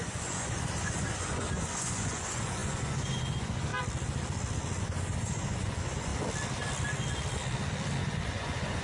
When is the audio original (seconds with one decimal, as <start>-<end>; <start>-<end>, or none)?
3.7-4.8; 6.1-8.0